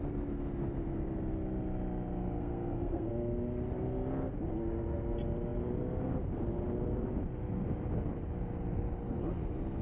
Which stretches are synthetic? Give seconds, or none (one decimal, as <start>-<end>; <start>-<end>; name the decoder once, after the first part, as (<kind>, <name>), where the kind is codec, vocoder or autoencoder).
2.4-3.1 (codec, SNAC)